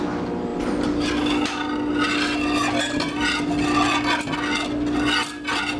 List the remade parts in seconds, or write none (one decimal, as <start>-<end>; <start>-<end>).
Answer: none